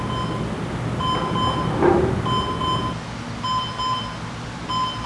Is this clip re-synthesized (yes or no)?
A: no